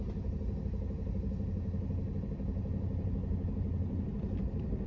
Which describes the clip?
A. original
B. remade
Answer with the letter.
A